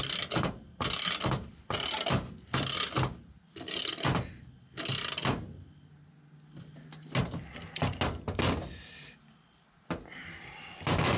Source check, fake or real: real